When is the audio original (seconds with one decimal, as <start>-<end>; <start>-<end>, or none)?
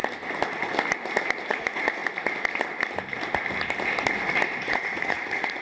0.0-1.5; 2.0-4.6